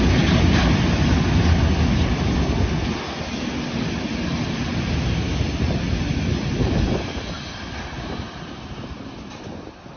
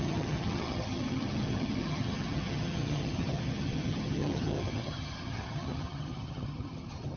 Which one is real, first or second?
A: first